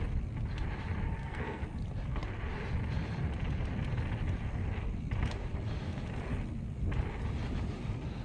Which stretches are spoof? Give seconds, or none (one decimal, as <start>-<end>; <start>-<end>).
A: 1.2-1.7